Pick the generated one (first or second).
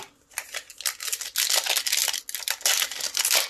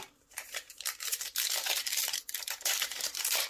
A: second